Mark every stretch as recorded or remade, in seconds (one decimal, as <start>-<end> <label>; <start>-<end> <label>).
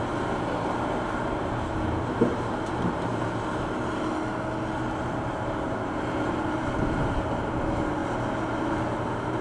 0.0-3.1 remade; 3.1-5.0 recorded; 5.0-8.0 remade; 8.0-8.6 recorded; 8.6-9.4 remade